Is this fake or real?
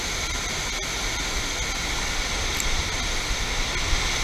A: real